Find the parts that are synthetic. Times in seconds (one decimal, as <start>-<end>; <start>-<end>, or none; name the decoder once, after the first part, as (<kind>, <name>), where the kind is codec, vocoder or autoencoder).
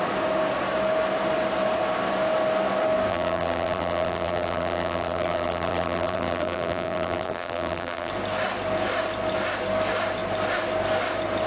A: 3.1-8.1 (vocoder, BigVGAN v2)